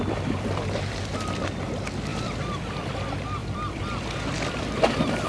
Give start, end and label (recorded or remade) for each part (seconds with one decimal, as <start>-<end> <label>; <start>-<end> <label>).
0.0-2.1 recorded; 2.1-2.9 remade; 2.9-3.4 recorded; 3.4-5.3 remade